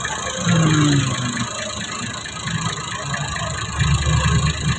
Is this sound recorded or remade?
recorded